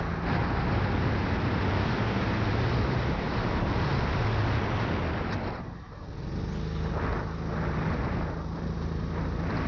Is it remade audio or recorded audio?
recorded